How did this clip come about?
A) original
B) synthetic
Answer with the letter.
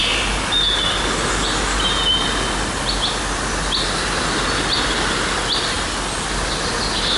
A